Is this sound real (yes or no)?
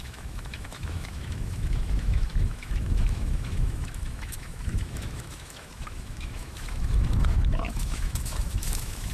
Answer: no